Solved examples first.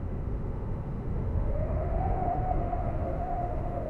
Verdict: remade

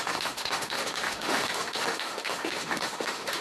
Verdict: remade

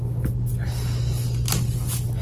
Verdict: recorded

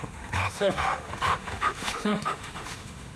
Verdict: remade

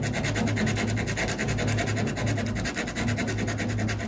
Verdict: recorded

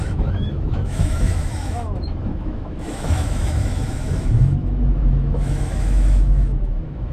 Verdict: remade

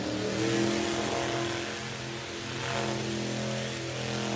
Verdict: recorded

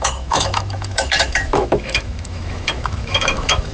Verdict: remade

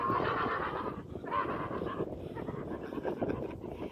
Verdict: recorded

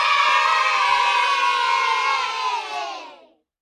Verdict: recorded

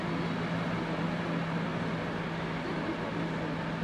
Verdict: recorded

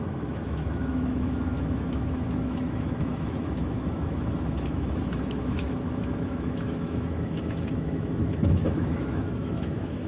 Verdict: remade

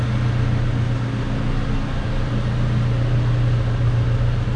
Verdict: recorded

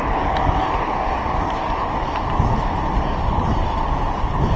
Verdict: recorded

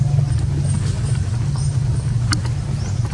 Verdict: recorded